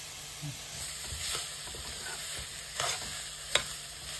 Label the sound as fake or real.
real